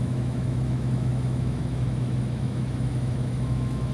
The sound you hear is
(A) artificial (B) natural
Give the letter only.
A